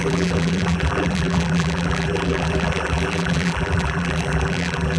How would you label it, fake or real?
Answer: fake